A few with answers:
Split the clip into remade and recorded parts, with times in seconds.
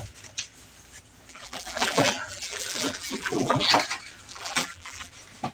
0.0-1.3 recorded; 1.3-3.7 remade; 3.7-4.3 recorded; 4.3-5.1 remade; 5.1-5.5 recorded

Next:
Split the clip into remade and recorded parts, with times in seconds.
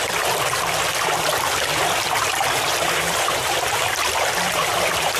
0.0-2.3 recorded; 2.3-5.2 remade